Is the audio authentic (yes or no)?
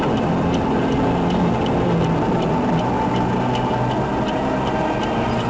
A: yes